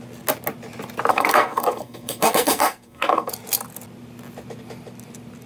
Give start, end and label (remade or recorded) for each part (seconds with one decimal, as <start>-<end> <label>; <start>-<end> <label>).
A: 0.0-1.1 recorded; 1.1-3.3 remade; 3.3-5.5 recorded